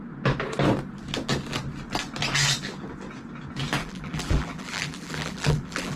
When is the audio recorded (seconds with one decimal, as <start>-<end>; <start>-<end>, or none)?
0.0-3.8